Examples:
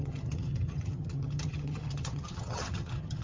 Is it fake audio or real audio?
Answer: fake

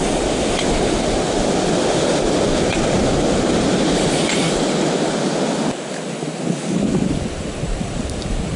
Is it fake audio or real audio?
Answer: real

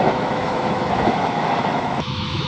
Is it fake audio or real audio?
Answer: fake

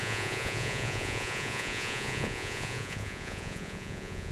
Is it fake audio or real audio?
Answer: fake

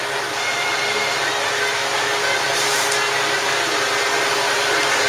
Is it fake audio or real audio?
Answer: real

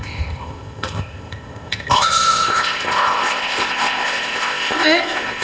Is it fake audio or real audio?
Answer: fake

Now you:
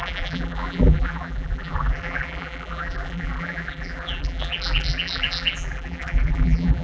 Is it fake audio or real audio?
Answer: fake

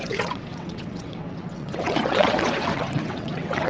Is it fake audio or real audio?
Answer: fake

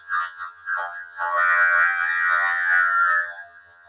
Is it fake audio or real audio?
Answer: fake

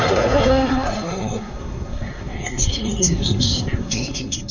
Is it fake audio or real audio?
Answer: fake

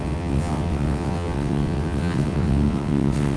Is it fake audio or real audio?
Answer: fake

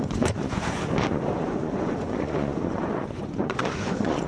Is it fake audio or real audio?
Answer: fake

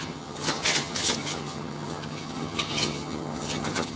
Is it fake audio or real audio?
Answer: fake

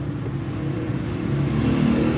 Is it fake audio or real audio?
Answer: real